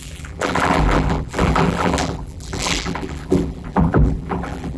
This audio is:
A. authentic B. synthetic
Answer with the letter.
B